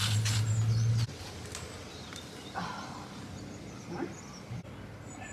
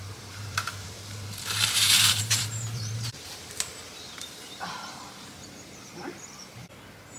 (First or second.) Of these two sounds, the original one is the first